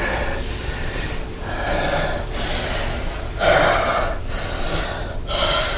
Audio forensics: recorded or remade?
remade